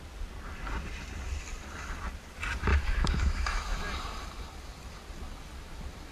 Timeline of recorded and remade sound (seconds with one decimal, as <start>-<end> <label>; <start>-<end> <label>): 0.0-2.7 recorded; 2.7-3.8 remade; 3.8-6.1 recorded